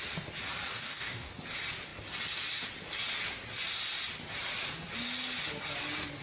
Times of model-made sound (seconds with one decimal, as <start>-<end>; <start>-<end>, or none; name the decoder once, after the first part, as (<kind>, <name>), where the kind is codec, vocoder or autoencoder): 0.7-1.3 (codec, DAC)